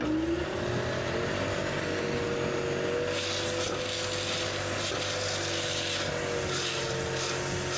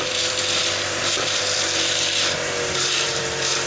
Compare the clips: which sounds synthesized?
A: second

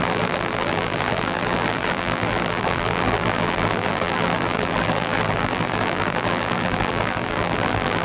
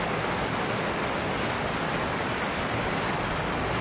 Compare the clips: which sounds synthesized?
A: first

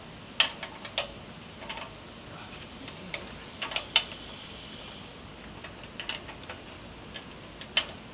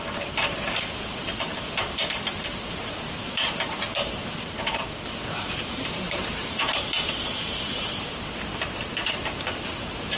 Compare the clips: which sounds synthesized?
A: second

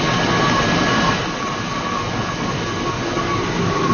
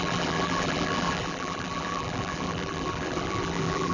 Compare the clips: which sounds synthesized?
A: second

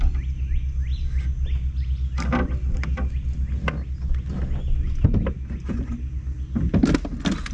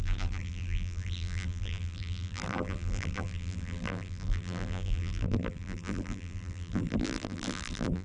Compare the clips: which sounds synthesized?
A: second